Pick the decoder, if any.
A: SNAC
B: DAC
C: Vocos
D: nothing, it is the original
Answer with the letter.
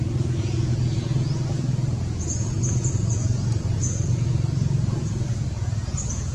C